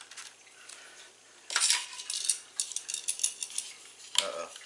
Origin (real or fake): real